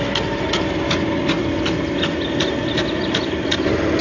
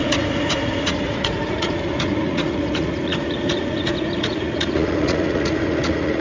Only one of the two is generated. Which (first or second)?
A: second